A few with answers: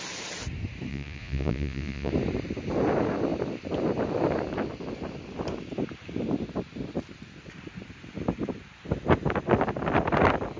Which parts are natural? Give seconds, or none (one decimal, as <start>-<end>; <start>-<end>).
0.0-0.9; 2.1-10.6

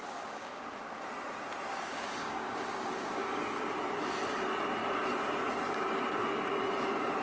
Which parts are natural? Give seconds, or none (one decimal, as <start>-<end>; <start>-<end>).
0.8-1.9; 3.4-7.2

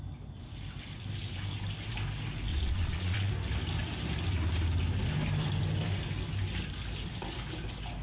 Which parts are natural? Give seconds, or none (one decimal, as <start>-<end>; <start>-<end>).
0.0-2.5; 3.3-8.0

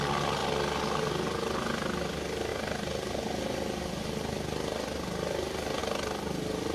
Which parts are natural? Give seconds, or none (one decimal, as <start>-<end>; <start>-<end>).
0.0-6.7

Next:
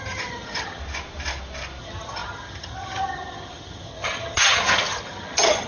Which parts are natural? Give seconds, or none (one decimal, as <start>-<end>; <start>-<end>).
0.8-1.8